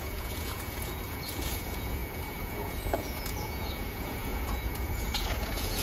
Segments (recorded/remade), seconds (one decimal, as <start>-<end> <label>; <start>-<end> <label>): 0.0-5.8 remade